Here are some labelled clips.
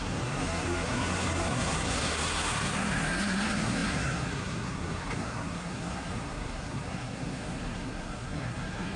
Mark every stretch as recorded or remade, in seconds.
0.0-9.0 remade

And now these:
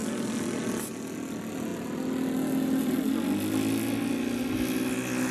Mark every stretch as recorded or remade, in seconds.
0.0-5.3 recorded

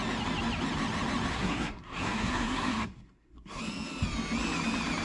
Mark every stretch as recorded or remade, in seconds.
0.0-1.3 recorded; 1.3-3.6 remade; 3.6-5.0 recorded

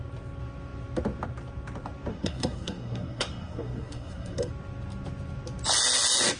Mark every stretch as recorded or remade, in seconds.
0.0-2.1 recorded; 2.1-4.5 remade; 4.5-6.4 recorded

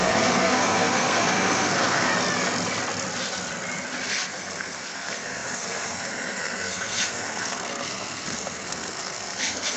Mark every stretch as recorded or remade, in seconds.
0.0-2.1 remade; 2.1-4.1 recorded; 4.1-9.8 remade

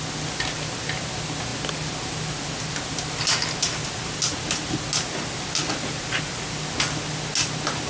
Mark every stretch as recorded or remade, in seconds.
0.0-7.9 recorded